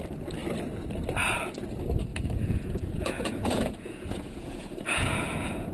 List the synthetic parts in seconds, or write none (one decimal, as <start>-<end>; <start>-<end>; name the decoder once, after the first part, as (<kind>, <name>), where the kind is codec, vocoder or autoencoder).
2.1-5.7 (vocoder, Vocos)